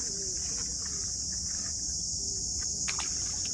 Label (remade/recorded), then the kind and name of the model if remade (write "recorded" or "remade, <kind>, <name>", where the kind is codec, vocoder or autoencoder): recorded